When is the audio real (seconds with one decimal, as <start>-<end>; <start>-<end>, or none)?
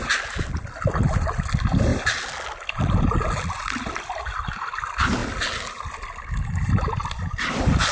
0.0-7.9